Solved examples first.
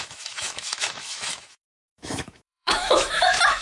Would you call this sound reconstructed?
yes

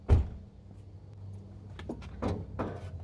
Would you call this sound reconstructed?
no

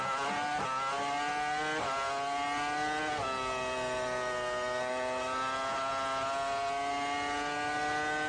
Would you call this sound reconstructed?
no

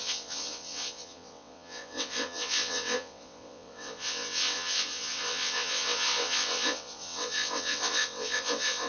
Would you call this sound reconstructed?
yes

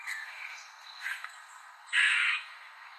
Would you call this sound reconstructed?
yes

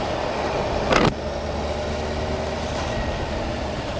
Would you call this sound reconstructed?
no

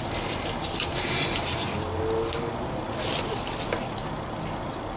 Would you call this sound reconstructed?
no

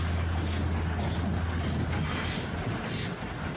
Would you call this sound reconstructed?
no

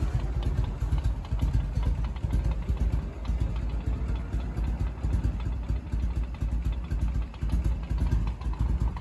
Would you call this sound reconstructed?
no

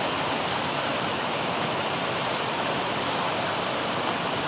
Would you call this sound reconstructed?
no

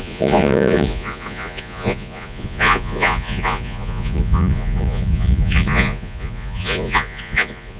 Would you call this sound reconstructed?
yes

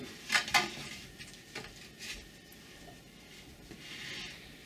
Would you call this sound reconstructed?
no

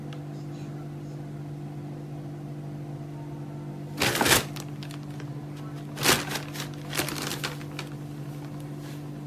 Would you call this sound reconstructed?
no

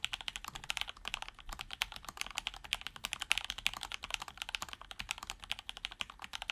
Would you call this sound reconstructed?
no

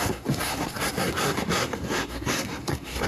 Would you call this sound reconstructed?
yes